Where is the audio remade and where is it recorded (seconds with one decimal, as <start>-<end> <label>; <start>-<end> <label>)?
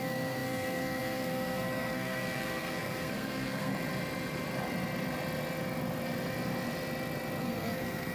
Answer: 0.0-3.7 remade; 3.7-7.4 recorded; 7.4-8.1 remade